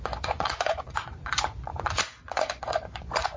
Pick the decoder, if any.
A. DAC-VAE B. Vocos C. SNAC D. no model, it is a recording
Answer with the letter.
B